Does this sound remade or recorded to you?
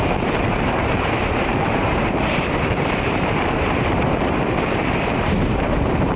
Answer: remade